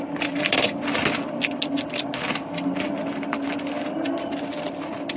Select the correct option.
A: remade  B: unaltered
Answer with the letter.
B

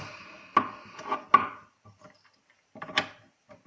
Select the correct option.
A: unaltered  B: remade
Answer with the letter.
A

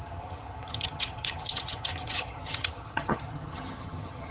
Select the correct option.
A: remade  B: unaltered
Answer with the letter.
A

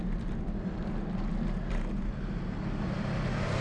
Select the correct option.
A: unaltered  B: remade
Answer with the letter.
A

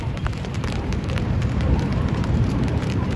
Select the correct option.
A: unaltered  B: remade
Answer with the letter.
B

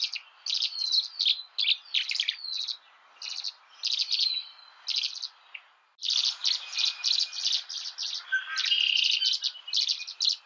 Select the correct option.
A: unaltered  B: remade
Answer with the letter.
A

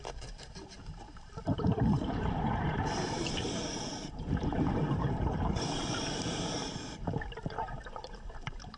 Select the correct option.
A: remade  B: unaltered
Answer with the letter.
A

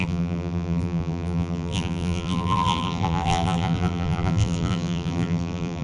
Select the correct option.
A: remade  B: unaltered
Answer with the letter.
A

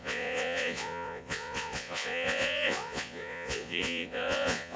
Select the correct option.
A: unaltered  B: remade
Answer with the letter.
B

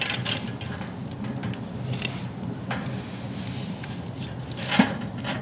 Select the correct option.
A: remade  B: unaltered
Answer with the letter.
B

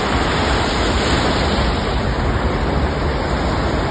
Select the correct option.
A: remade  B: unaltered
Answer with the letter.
B